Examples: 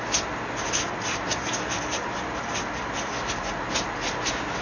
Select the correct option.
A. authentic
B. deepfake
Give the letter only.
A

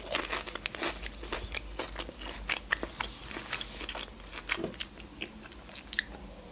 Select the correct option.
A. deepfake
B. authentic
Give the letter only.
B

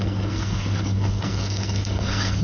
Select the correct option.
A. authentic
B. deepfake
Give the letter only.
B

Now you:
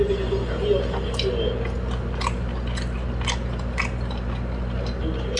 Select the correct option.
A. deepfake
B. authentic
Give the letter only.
B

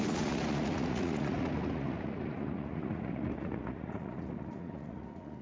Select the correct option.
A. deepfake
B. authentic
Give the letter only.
A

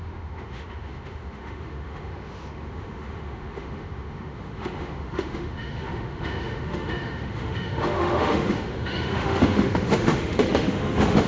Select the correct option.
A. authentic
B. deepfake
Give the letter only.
B